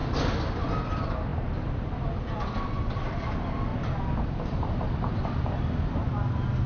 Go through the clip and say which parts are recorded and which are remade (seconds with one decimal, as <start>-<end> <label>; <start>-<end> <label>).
0.0-6.7 recorded